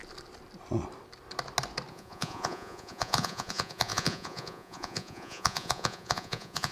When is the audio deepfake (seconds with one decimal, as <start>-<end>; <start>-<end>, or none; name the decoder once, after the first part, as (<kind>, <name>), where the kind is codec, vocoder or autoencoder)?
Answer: 1.9-6.7 (vocoder, Vocos)